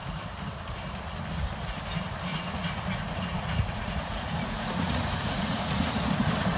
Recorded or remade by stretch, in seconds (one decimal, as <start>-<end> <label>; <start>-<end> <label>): 0.0-2.3 recorded; 2.3-6.1 remade; 6.1-6.6 recorded